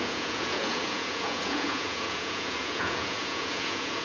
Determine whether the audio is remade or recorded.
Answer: remade